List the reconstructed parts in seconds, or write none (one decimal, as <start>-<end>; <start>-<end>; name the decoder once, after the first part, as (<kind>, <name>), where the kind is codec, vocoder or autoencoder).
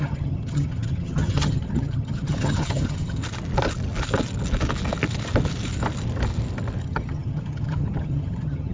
0.0-3.2 (vocoder, HiFi-GAN); 6.8-8.7